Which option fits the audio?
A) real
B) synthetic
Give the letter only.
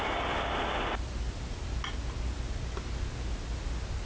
A